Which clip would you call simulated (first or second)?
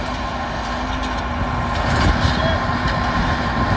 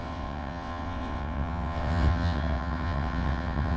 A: second